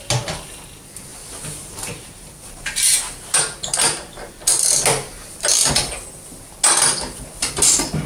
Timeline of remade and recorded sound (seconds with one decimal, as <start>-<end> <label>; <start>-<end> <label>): 0.0-1.1 recorded; 1.1-4.3 remade; 4.3-8.1 recorded